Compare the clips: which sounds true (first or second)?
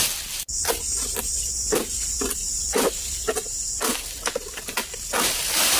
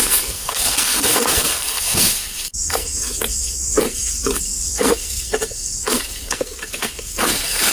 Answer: first